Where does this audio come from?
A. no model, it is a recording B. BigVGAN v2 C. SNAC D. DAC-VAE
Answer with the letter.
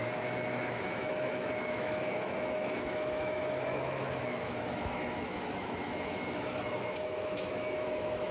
D